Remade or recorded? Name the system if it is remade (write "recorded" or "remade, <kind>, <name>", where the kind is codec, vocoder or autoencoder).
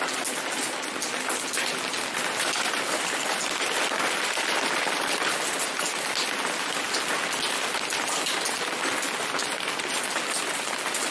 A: recorded